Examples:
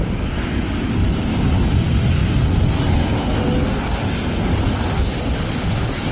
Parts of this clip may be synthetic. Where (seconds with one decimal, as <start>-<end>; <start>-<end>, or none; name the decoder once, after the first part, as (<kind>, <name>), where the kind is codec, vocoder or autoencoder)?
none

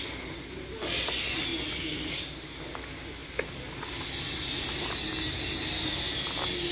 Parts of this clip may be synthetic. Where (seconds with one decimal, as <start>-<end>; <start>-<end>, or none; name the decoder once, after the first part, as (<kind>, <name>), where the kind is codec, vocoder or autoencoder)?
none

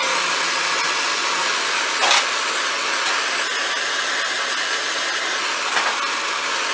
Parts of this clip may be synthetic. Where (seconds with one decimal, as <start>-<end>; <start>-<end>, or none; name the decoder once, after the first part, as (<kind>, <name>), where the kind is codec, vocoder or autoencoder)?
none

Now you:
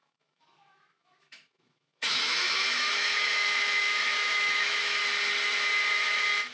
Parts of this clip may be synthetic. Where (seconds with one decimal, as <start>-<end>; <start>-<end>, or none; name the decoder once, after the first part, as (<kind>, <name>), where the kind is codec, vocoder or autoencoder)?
0.0-5.0 (autoencoder, DAC-VAE); 5.9-6.5

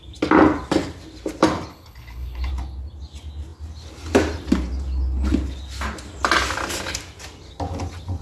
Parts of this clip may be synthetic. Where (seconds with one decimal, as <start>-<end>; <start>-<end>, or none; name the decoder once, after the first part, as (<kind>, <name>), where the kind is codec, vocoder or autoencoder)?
1.7-2.5 (codec, HILCodec)

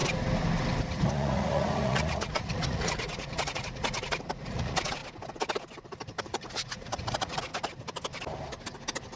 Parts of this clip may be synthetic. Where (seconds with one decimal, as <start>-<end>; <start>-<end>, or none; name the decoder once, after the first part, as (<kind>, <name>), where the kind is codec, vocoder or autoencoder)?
1.1-5.0 (vocoder, Vocos); 6.2-7.5